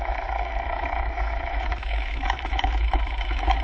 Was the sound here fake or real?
fake